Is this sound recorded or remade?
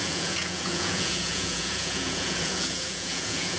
remade